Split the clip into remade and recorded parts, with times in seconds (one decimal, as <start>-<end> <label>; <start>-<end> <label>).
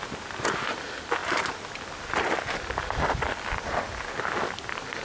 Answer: 0.0-5.0 recorded